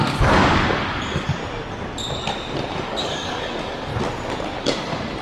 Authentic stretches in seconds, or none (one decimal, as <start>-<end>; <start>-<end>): 1.4-2.8; 3.9-5.2